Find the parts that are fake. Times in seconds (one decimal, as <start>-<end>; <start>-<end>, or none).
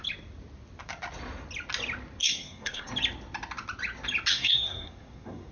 2.2-2.9; 4.3-5.5